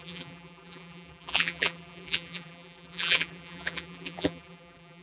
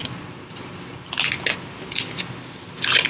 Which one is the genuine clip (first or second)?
second